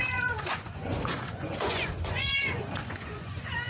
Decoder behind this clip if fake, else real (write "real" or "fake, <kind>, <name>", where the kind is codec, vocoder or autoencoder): fake, vocoder, Vocos